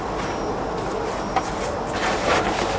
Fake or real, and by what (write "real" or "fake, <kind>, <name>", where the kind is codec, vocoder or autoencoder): real